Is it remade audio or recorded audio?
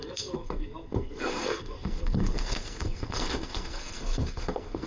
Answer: remade